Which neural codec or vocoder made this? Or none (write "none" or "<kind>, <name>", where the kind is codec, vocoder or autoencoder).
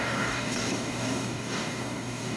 codec, DAC